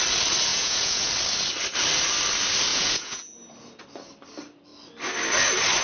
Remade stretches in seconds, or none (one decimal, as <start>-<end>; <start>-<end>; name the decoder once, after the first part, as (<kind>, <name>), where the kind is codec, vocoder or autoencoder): 0.5-1.1 (vocoder, Vocos); 2.7-3.4